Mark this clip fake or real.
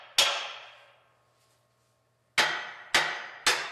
real